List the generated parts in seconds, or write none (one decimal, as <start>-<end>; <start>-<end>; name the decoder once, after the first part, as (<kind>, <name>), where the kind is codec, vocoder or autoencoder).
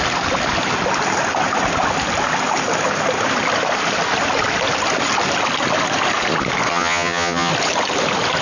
6.7-7.5 (vocoder, HiFi-GAN)